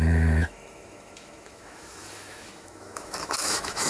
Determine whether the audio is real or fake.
fake